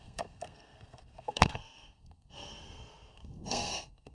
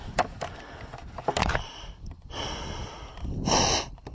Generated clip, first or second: first